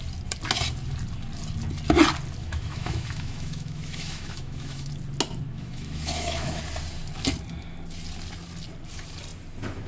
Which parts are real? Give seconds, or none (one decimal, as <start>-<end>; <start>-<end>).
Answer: 0.0-2.4; 4.9-5.5; 6.6-9.9